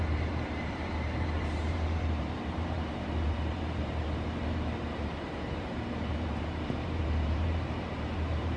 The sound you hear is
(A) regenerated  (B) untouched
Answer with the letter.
A